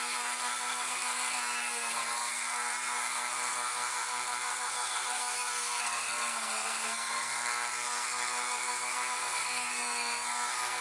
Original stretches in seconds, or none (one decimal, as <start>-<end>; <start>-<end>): none